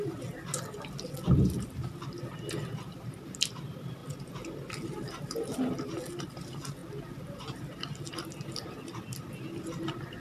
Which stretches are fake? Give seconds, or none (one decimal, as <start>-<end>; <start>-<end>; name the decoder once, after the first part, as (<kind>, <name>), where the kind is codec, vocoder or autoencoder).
none